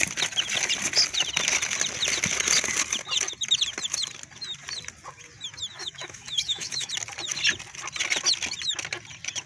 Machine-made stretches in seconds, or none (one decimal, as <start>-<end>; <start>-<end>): 5.8-6.9